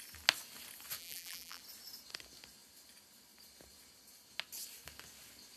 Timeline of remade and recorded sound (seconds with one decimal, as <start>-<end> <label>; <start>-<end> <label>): 0.0-1.0 recorded; 1.0-1.6 remade; 1.6-5.6 recorded